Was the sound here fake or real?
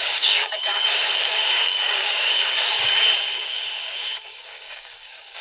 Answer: fake